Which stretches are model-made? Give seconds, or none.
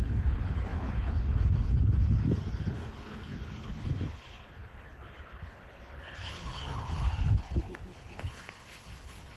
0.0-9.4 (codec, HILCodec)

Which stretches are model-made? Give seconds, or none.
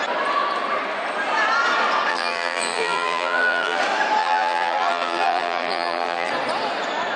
2.1-3.8 (vocoder, BigVGAN v2); 4.2-6.3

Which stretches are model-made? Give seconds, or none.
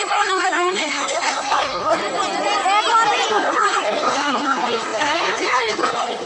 0.0-2.0 (codec, SNAC); 3.3-6.3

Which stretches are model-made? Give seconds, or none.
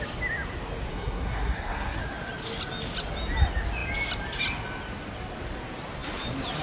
0.9-2.0 (codec, SNAC)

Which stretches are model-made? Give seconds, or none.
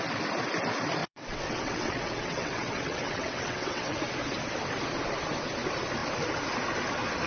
1.0-4.0 (vocoder, WaveNeXt)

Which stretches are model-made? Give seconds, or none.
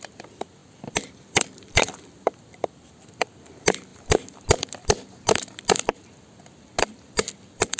0.0-3.9 (vocoder, BigVGAN v2); 6.8-7.8